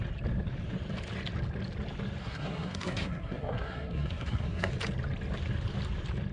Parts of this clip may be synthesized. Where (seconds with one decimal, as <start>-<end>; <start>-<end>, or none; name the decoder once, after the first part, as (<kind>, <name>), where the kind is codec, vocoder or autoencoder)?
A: 2.2-4.7 (codec, SNAC)